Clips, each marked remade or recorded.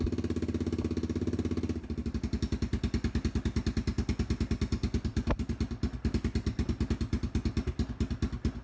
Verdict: recorded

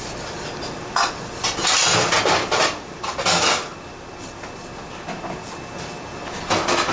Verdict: recorded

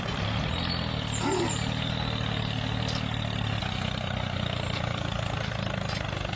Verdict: recorded